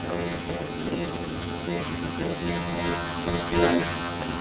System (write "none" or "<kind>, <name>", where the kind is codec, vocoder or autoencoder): vocoder, HiFi-GAN